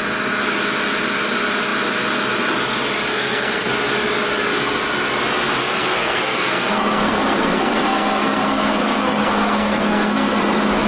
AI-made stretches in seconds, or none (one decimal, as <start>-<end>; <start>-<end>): 3.1-3.7; 5.6-10.4